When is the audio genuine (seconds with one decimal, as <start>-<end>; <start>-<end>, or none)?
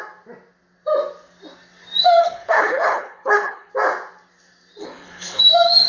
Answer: 0.0-2.2; 3.7-4.8; 5.4-5.9